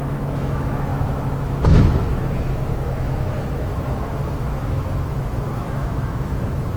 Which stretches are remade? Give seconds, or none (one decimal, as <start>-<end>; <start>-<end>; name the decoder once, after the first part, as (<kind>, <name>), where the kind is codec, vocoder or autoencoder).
0.0-6.8 (autoencoder, DAC-VAE)